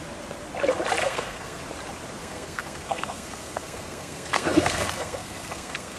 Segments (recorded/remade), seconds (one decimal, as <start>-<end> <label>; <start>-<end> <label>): 0.0-1.0 recorded; 1.0-1.6 remade; 1.6-2.2 recorded; 2.2-6.0 remade